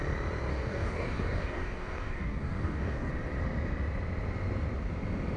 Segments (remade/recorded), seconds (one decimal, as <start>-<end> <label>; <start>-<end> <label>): 0.0-0.5 recorded; 0.5-3.1 remade; 3.1-5.4 recorded